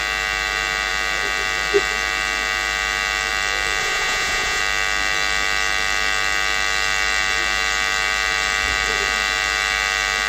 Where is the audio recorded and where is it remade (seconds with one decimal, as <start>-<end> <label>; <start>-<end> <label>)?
0.0-3.8 recorded; 3.8-4.6 remade; 4.6-10.3 recorded